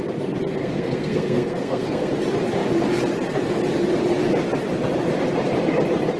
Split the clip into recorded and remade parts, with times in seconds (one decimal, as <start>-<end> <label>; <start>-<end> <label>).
0.0-0.6 recorded; 0.6-2.1 remade; 2.1-6.2 recorded